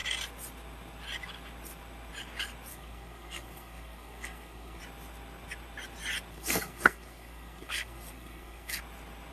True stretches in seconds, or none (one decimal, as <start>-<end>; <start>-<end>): 0.0-2.7; 4.8-6.3; 8.8-9.3